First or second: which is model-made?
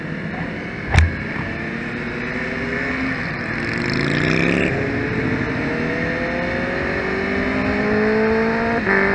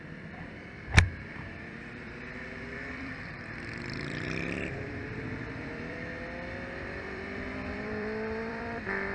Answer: second